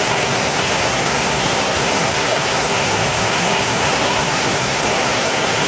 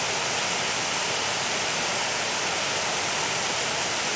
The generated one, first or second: first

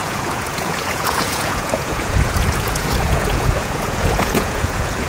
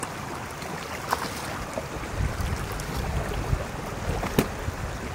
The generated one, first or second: first